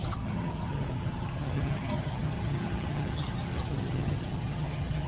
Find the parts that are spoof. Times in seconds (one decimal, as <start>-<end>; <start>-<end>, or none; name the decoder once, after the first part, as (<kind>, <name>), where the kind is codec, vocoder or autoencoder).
0.0-5.1 (vocoder, HiFi-GAN)